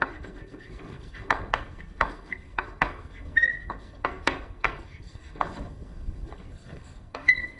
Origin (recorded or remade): remade